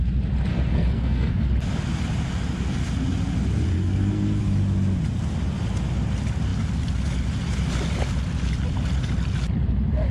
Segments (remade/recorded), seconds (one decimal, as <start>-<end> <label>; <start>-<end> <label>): 0.0-0.5 recorded; 0.5-1.5 remade; 1.5-3.7 recorded; 3.7-4.4 remade; 4.4-10.1 recorded